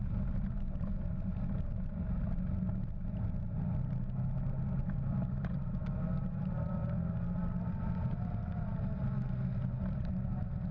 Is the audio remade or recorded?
recorded